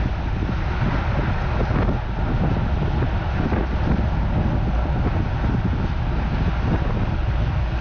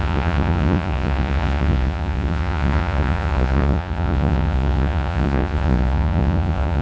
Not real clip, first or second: second